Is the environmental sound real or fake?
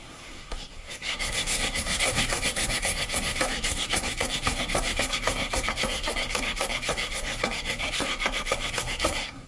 fake